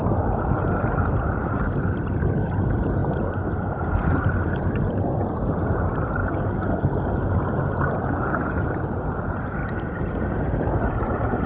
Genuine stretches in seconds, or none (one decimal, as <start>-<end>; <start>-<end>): 6.2-8.3; 9.6-10.4